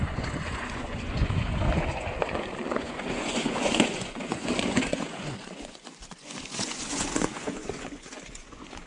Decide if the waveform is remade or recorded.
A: remade